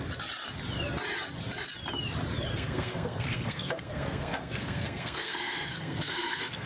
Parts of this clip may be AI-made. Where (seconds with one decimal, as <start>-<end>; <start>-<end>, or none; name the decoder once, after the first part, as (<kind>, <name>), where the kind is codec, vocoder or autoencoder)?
2.5-6.7 (codec, SNAC)